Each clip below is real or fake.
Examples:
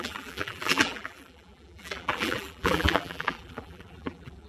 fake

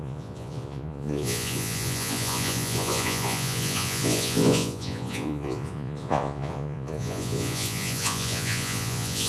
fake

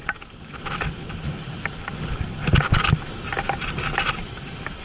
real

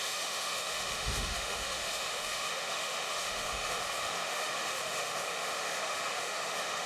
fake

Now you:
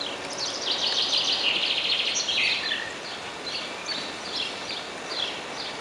real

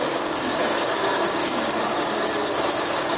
fake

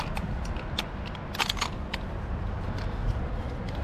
real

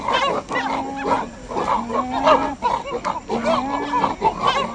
real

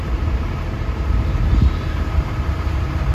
fake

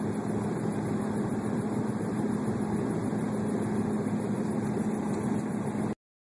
real